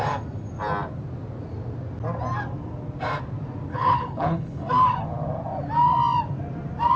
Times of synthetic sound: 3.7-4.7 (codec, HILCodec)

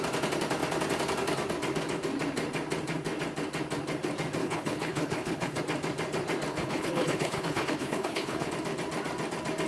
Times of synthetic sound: 4.4-5.6 (codec, HILCodec); 6.5-8.5

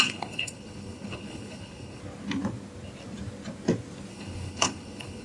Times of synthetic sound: 0.0-2.0 (codec, HILCodec); 4.1-5.2

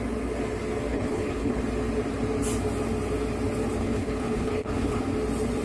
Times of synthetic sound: 0.9-1.6 (codec, HILCodec); 3.8-5.0